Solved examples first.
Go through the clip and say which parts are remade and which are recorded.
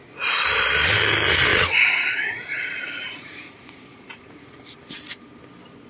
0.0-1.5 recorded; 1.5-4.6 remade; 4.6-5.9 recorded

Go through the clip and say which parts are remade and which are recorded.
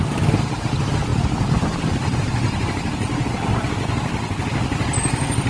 0.0-5.5 recorded